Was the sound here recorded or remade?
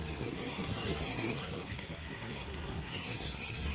remade